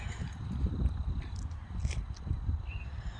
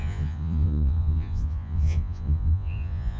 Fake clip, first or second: second